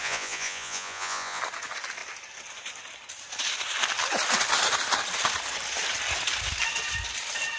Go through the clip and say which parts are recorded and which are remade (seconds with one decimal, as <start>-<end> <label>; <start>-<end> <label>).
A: 0.0-1.4 remade; 1.4-7.6 recorded